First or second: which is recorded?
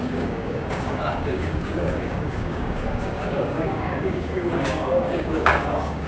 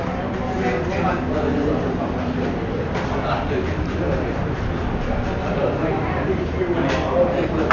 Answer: second